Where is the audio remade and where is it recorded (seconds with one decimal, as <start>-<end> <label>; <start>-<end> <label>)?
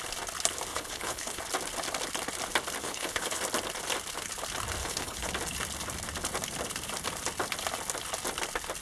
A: 0.0-0.7 recorded; 0.7-1.4 remade; 1.4-2.8 recorded; 2.8-3.4 remade; 3.4-4.8 recorded; 4.8-5.3 remade; 5.3-8.8 recorded